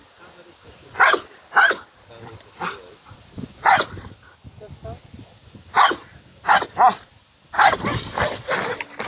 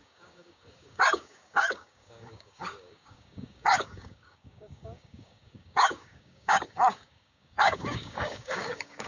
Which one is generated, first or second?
second